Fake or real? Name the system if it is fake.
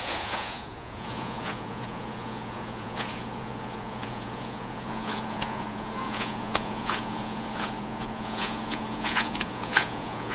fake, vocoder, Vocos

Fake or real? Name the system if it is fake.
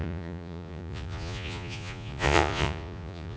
fake, vocoder, Vocos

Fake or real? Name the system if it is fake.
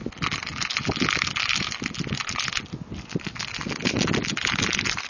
real